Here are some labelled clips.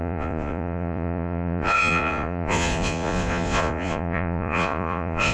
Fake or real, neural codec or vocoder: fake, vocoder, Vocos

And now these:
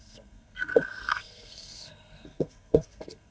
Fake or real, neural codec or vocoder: fake, codec, SNAC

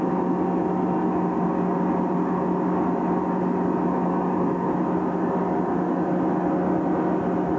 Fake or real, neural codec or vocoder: real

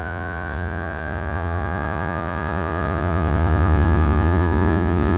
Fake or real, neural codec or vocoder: fake, vocoder, Vocos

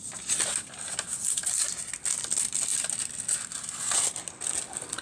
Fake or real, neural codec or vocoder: real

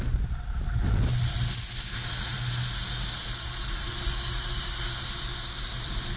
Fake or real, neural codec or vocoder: real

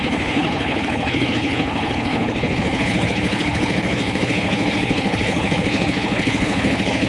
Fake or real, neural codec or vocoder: fake, codec, HILCodec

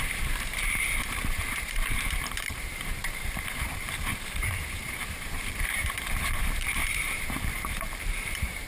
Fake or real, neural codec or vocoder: fake, vocoder, BigVGAN v2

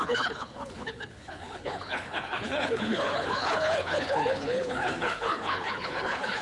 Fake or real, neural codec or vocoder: fake, codec, HILCodec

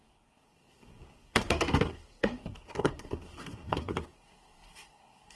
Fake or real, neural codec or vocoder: fake, codec, SNAC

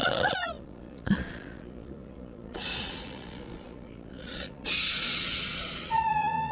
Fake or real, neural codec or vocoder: fake, vocoder, Vocos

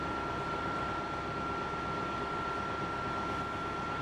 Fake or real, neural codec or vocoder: real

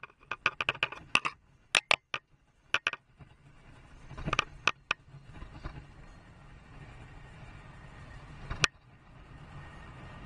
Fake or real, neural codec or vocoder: real